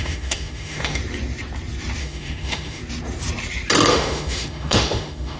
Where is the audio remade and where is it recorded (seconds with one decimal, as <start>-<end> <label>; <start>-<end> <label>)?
0.0-1.0 remade; 1.0-2.0 recorded; 2.0-2.8 remade; 2.8-3.9 recorded; 3.9-5.4 remade